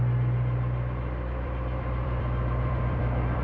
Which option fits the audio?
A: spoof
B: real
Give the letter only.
A